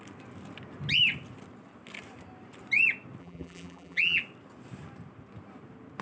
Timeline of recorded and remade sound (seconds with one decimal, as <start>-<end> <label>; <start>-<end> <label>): 0.0-3.2 recorded; 3.2-4.2 remade; 4.2-6.0 recorded